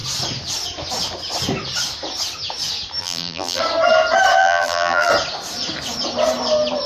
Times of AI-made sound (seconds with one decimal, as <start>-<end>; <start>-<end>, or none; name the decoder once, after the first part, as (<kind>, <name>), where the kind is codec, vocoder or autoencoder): 3.0-3.6 (vocoder, BigVGAN v2); 4.4-5.1